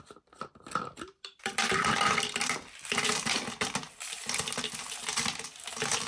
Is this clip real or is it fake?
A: fake